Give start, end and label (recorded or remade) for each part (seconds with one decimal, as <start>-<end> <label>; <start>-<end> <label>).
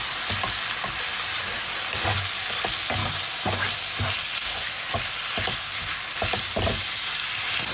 0.0-7.7 recorded